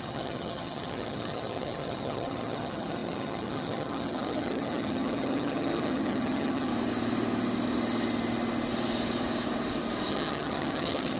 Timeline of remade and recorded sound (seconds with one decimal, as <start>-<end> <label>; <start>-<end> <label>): 0.0-6.7 remade; 6.7-10.1 recorded; 10.1-11.2 remade